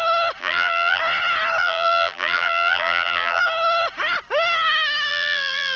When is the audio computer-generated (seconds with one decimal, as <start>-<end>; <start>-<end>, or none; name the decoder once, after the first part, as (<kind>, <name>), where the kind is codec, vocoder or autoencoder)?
0.4-1.0 (vocoder, BigVGAN v2); 1.6-3.4; 5.1-5.8